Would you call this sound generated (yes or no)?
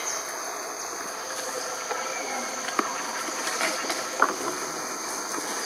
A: no